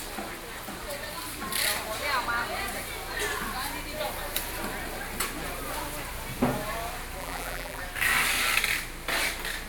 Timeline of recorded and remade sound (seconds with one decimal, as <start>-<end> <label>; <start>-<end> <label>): 0.0-7.2 recorded; 7.2-7.8 remade; 7.8-9.7 recorded